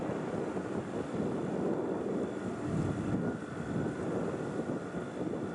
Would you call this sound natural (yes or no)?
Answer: yes